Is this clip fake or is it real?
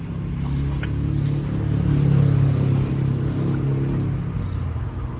real